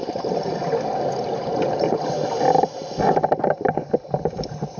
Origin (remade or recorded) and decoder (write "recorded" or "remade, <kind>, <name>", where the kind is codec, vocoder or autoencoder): recorded